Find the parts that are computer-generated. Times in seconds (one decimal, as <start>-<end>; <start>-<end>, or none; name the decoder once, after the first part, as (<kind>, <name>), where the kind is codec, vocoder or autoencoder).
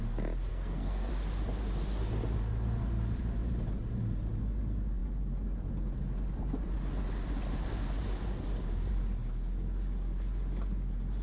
0.5-1.1 (codec, SNAC)